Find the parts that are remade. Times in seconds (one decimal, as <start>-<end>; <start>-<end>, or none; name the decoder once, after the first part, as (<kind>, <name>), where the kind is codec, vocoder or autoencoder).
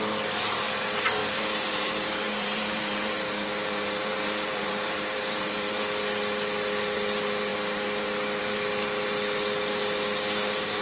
1.2-5.7 (vocoder, BigVGAN v2)